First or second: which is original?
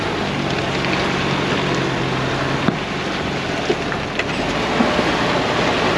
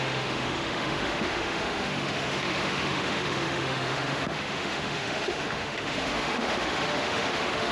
first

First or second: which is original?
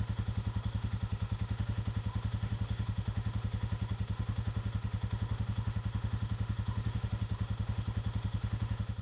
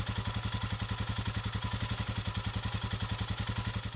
second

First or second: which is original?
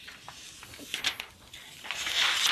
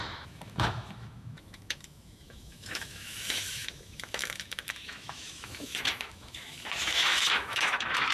first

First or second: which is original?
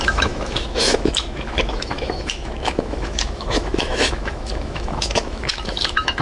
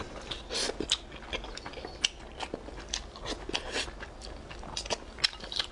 second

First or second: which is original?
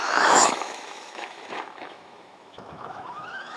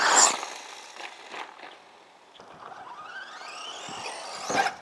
second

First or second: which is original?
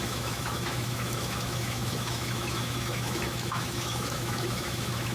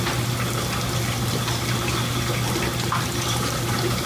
second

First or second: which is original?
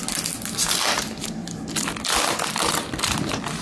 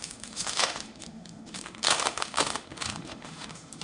first